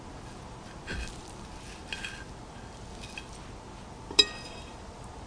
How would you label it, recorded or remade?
recorded